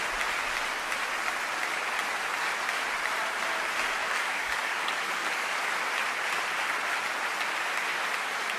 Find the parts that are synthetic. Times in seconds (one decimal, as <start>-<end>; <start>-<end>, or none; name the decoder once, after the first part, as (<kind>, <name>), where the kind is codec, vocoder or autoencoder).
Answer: 4.0-5.7 (codec, DAC)